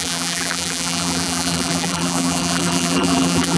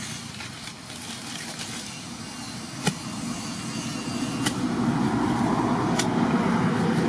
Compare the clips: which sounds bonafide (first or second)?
second